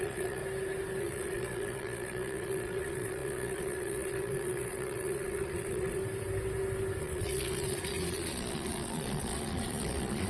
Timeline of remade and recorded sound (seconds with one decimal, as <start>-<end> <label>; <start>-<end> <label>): 0.0-0.4 remade; 0.4-1.0 recorded; 1.0-6.0 remade; 6.0-7.0 recorded; 7.0-10.3 remade